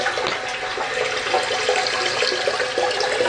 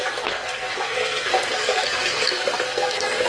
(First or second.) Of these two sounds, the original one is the first